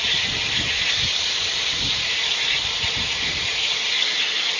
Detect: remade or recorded recorded